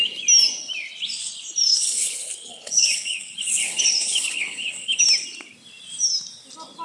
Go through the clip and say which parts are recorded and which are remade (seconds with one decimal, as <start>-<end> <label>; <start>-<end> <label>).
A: 0.0-1.7 recorded; 1.7-5.0 remade; 5.0-6.8 recorded